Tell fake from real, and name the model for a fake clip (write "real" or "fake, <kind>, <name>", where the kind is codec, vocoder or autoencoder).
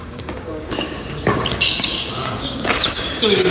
fake, codec, DAC